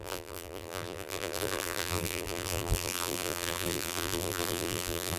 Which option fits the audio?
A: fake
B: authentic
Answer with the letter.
A